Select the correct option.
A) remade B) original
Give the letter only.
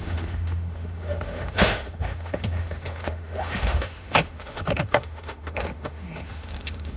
A